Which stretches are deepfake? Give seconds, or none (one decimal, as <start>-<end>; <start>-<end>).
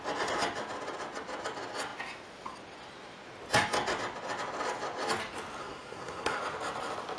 5.6-6.4